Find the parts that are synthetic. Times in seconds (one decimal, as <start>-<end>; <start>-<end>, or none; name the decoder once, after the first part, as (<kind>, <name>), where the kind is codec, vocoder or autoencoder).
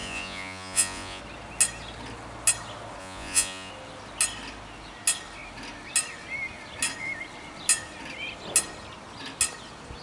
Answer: 0.0-1.2 (vocoder, Vocos); 3.0-3.7